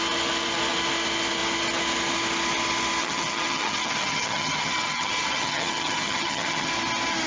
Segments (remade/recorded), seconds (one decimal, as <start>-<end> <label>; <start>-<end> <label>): 0.0-3.0 recorded; 3.0-6.7 remade; 6.7-7.3 recorded